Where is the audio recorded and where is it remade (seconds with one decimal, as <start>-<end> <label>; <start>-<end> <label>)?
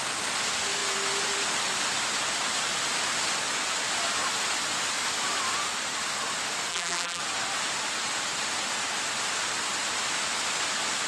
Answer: 0.0-6.7 recorded; 6.7-7.2 remade; 7.2-11.1 recorded